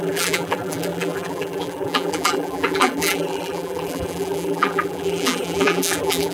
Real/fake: fake